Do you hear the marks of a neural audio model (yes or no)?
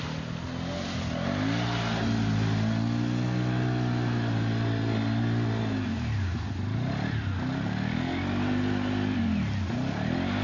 no